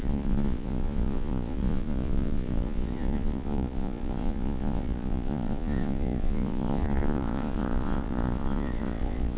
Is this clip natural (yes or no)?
no